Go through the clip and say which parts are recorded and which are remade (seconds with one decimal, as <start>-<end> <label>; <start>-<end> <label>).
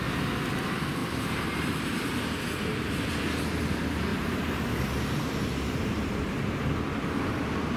0.0-1.0 recorded; 1.0-3.1 remade; 3.1-4.1 recorded; 4.1-6.6 remade; 6.6-7.8 recorded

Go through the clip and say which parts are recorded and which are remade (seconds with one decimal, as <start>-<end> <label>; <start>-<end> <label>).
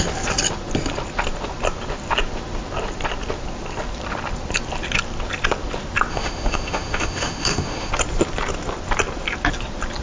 0.0-6.1 recorded; 6.1-7.9 remade; 7.9-10.0 recorded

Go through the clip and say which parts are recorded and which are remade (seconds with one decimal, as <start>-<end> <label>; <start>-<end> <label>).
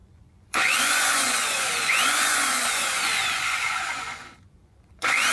0.0-5.3 remade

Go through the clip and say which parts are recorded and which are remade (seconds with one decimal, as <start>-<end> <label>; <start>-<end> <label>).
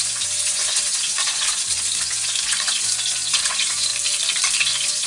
0.0-3.9 remade; 3.9-4.6 recorded; 4.6-5.1 remade